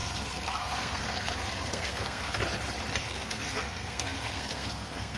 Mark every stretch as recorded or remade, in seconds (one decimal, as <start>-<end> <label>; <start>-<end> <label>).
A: 0.0-2.4 remade; 2.4-3.0 recorded; 3.0-5.2 remade